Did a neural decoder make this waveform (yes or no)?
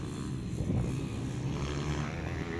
no